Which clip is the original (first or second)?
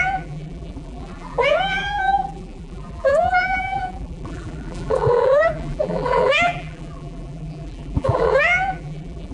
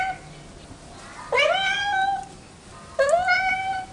second